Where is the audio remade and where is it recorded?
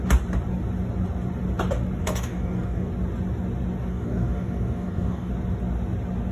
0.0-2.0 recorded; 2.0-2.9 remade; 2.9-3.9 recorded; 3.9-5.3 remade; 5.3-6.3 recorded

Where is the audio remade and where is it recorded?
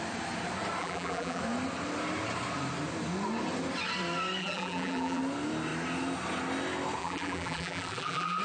0.0-0.8 recorded; 0.8-1.4 remade; 1.4-4.4 recorded; 4.4-5.2 remade; 5.2-7.0 recorded; 7.0-8.4 remade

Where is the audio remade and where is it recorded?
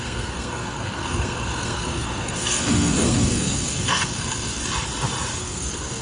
0.0-4.6 remade; 4.6-5.4 recorded; 5.4-6.0 remade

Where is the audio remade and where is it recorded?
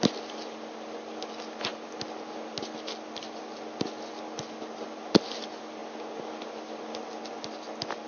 0.0-8.1 recorded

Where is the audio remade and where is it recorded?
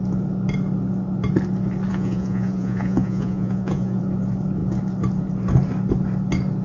0.0-1.9 recorded; 1.9-4.0 remade; 4.0-6.6 recorded